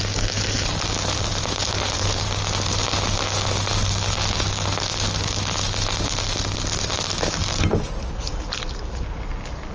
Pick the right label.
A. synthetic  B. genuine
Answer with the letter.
B